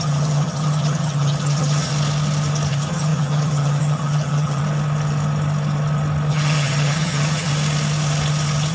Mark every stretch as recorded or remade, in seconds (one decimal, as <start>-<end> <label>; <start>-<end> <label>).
0.0-1.9 remade; 1.9-2.7 recorded; 2.7-4.6 remade; 4.6-6.3 recorded; 6.3-7.5 remade; 7.5-8.7 recorded